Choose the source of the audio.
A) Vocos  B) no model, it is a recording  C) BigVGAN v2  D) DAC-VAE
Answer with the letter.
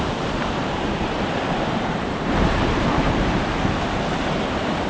C